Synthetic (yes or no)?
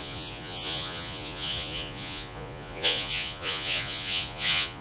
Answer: yes